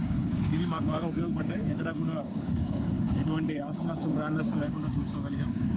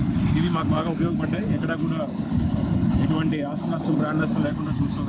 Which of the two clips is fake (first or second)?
first